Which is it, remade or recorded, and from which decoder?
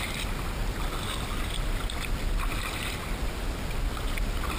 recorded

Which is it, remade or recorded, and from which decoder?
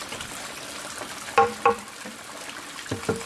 remade, vocoder, BigVGAN v2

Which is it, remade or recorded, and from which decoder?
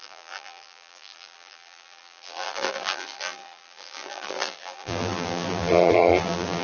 remade, vocoder, BigVGAN v2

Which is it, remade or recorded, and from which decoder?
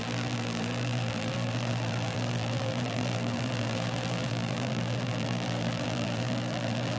remade, vocoder, BigVGAN v2